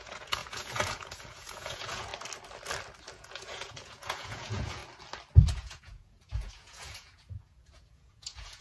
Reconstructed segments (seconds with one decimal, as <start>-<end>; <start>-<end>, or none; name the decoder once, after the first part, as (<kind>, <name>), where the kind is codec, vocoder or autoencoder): 0.0-2.1 (vocoder, Vocos); 3.1-4.8; 5.5-8.6